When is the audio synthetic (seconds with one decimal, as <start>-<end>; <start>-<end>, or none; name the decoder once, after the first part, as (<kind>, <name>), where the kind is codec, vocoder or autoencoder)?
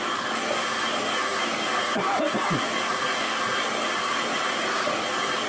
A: none